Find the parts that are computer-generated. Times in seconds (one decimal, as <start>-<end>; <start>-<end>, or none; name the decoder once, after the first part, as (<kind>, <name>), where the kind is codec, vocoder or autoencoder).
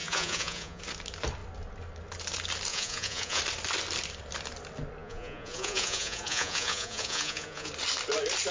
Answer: 0.0-0.8 (vocoder, Vocos); 2.7-3.4; 5.0-7.7